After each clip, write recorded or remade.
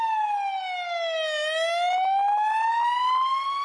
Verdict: recorded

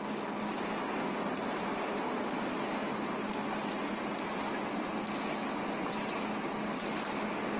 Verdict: recorded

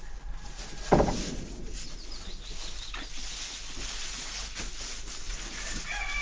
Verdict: recorded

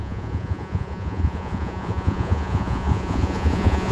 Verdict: remade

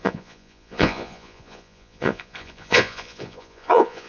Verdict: remade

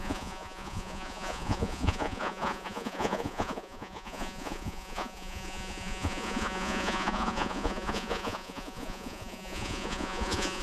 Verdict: remade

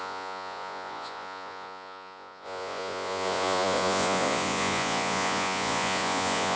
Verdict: remade